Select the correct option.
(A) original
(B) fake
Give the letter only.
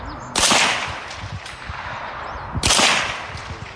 A